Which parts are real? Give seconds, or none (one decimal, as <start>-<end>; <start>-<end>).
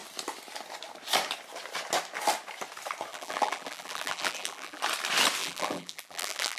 0.0-3.1; 4.8-5.4